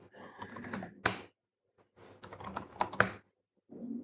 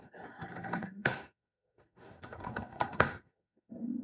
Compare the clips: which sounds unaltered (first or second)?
first